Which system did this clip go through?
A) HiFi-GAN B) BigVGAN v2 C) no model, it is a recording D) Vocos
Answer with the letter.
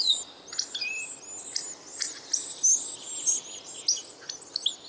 C